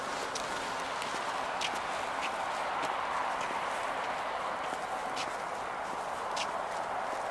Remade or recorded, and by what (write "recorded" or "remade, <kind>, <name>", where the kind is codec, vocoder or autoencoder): recorded